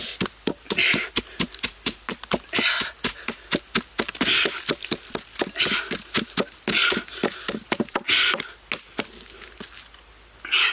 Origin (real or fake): real